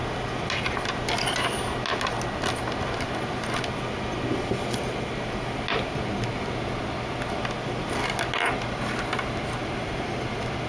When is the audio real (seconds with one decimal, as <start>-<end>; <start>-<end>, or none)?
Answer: 0.0-9.6; 10.2-10.7